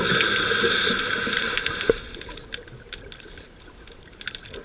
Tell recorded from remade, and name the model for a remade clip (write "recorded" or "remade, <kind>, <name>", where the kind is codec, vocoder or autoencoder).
recorded